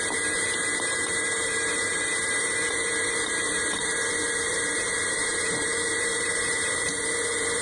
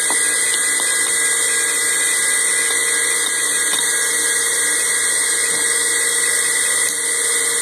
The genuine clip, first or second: second